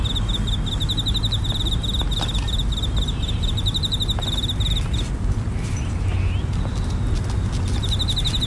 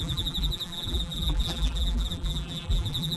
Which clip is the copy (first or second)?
second